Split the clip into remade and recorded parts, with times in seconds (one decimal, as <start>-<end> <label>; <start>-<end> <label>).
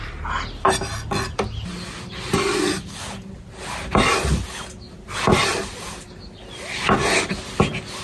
0.0-8.0 recorded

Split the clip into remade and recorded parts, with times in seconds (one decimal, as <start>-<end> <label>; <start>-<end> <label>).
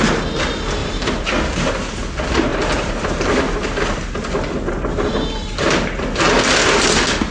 0.0-0.8 recorded; 0.8-1.7 remade; 1.7-2.5 recorded; 2.5-5.1 remade; 5.1-7.3 recorded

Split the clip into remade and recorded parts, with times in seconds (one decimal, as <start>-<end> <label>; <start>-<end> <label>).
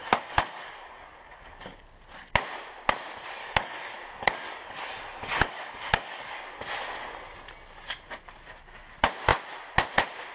0.0-1.8 remade; 1.8-3.4 recorded; 3.4-6.4 remade; 6.4-10.3 recorded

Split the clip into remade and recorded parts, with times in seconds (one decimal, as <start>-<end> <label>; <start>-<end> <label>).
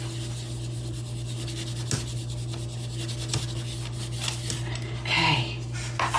0.0-6.2 recorded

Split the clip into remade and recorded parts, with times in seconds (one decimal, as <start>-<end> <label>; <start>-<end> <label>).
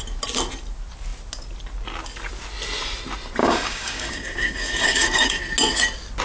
0.0-3.4 recorded; 3.4-5.4 remade; 5.4-6.2 recorded